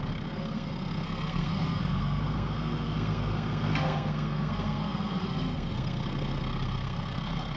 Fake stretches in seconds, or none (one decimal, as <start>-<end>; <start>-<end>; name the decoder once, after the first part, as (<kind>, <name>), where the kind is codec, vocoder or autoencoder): 0.0-7.6 (codec, SNAC)